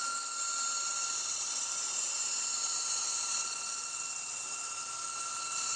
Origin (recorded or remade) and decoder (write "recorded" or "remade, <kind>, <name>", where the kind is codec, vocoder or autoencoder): recorded